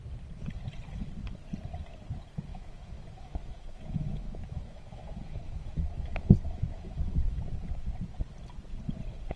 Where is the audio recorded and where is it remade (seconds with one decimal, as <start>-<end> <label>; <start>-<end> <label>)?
0.0-2.5 recorded; 2.5-7.4 remade; 7.4-9.4 recorded